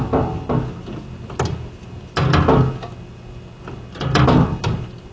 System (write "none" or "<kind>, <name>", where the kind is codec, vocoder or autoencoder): none